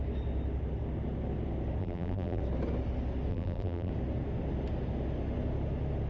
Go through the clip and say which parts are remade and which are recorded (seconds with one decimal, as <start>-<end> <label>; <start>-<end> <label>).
0.0-1.8 recorded; 1.8-2.4 remade; 2.4-3.3 recorded; 3.3-3.9 remade; 3.9-6.1 recorded